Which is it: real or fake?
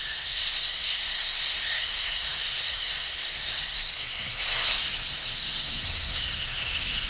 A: fake